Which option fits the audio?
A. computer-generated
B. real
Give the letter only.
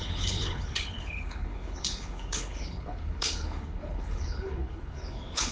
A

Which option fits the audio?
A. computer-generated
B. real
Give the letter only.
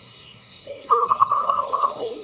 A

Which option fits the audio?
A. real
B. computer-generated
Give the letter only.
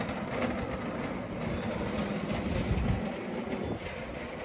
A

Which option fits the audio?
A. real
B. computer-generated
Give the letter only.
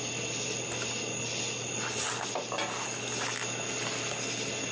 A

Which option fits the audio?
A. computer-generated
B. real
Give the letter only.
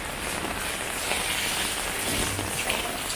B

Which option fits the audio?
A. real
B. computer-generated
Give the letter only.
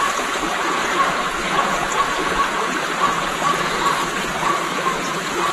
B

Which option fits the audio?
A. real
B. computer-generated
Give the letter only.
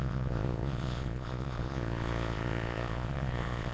B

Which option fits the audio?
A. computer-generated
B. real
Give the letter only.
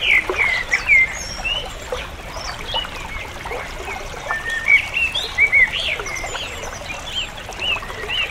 B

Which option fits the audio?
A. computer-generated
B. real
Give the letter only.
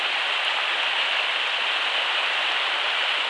B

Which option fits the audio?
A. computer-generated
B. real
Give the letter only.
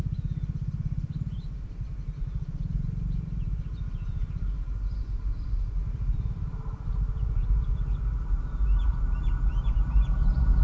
B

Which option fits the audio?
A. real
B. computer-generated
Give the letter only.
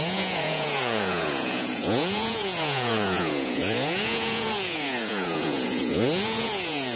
B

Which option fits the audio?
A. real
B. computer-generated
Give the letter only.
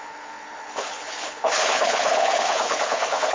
B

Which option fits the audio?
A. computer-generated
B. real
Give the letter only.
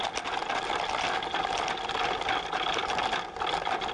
B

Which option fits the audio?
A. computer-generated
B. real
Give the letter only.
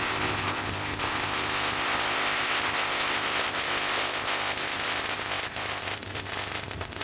A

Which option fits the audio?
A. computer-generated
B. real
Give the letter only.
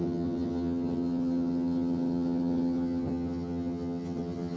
A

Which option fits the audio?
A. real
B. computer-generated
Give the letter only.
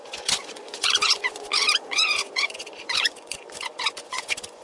B